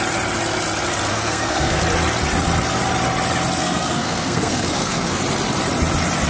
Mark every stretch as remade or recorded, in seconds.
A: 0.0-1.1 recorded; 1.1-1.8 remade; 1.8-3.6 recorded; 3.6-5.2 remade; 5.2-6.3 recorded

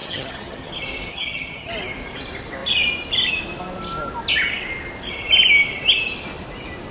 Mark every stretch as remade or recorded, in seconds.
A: 0.0-0.7 remade; 0.7-1.1 recorded; 1.1-1.7 remade; 1.7-6.9 recorded